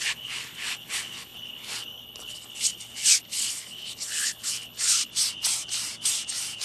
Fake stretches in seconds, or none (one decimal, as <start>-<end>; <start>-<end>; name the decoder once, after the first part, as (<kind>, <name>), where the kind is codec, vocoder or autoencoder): 0.0-5.1 (codec, HILCodec)